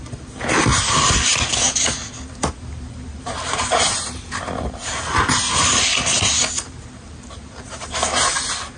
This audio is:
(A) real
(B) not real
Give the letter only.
A